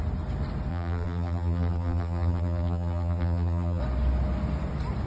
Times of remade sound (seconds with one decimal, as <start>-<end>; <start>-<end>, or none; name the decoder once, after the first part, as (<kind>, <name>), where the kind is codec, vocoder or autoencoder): 0.7-3.8 (vocoder, BigVGAN v2)